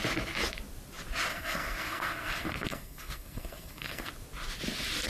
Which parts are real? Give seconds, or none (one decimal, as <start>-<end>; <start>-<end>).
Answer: 0.0-1.3; 4.1-5.1